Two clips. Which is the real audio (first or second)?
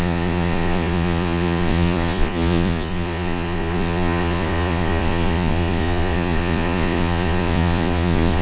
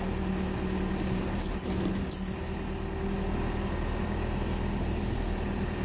second